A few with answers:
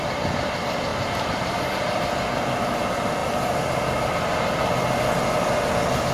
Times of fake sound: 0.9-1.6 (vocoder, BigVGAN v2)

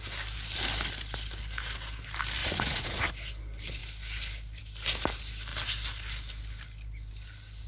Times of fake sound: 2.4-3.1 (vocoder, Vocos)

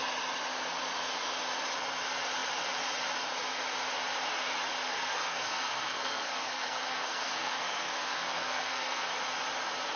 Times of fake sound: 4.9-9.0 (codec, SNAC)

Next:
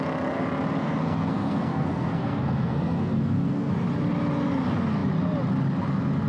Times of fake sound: 0.8-3.7 (codec, SNAC)